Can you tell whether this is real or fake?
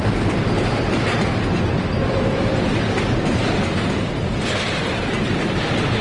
real